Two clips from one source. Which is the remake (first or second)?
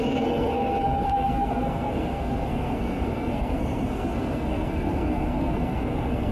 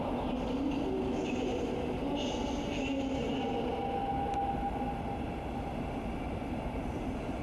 first